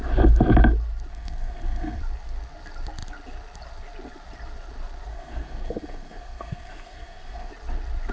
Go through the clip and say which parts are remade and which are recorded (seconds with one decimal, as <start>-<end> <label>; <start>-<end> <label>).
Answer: 0.0-1.1 recorded; 1.1-2.0 remade; 2.0-5.1 recorded; 5.1-7.5 remade; 7.5-8.1 recorded